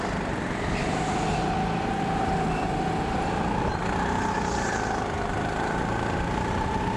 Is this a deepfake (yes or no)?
no